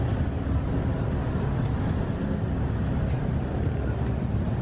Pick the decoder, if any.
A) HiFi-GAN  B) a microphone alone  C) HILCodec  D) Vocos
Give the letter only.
B